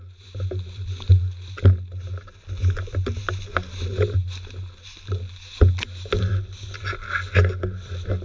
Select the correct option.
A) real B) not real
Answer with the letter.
A